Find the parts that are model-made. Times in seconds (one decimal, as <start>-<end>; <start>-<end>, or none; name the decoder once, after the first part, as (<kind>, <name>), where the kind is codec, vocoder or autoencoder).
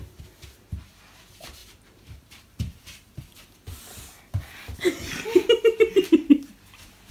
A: 1.6-3.2 (vocoder, BigVGAN v2)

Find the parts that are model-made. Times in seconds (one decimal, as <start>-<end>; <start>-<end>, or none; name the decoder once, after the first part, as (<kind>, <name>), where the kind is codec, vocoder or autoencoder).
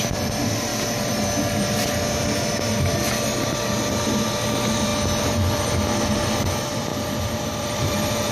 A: 6.9-8.3 (vocoder, BigVGAN v2)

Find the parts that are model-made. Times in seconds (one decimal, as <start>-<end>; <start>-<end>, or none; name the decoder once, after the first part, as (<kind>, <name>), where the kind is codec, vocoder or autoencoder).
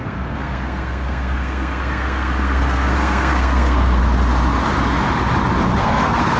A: 0.0-4.0 (codec, SNAC); 5.8-6.4